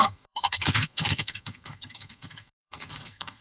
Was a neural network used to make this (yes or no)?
yes